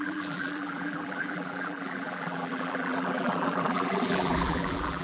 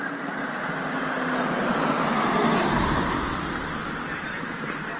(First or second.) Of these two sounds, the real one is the second